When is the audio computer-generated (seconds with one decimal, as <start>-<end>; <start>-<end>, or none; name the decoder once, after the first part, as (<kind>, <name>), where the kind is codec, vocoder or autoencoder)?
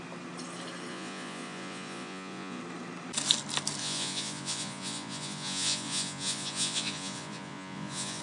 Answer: 0.9-2.6 (vocoder, Vocos); 3.8-8.2